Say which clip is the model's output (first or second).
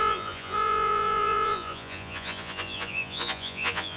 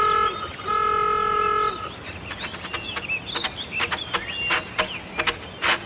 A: first